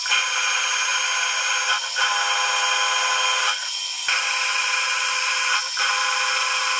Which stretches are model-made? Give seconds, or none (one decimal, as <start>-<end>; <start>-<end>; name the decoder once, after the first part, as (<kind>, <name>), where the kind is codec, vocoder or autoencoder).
none